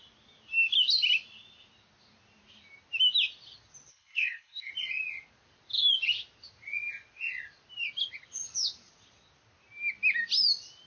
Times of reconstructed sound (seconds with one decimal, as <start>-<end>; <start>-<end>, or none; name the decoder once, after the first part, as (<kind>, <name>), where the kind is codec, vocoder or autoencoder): 3.9-4.7 (codec, HILCodec)

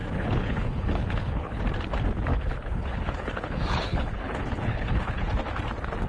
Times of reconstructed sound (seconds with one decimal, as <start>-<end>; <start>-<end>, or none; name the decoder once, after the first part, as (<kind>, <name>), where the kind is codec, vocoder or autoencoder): 0.0-1.6 (codec, HILCodec); 2.3-5.2

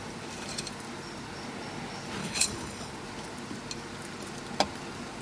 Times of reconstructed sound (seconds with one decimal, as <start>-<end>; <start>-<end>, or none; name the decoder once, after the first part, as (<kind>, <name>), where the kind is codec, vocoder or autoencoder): 2.2-2.9 (codec, HILCodec)

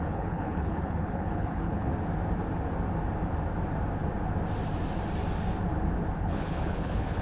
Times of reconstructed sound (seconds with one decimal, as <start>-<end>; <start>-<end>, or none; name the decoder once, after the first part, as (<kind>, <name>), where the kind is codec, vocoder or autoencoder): 0.0-1.9 (codec, HILCodec); 6.2-7.2

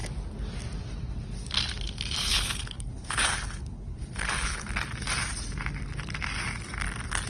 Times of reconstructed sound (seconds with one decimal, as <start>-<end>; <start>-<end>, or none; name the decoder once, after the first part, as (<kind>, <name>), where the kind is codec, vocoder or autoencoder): 2.2-4.7 (codec, HILCodec)

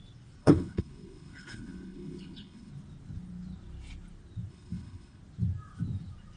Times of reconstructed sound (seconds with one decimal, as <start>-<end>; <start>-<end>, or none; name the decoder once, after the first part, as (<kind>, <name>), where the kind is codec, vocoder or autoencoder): 0.4-2.7 (codec, HILCodec); 4.5-5.2